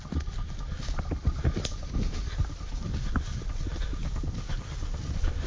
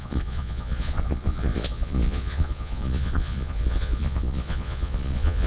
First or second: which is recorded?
first